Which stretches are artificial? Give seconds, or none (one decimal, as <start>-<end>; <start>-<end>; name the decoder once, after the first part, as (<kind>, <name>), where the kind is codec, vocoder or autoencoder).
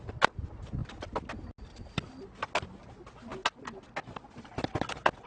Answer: none